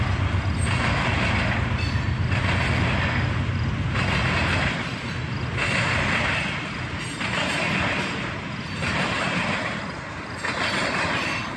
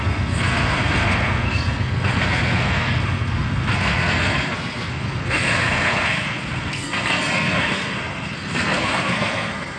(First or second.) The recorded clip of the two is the first